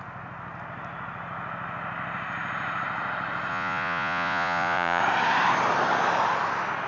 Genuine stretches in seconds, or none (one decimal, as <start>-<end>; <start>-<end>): 0.0-3.5; 5.0-6.9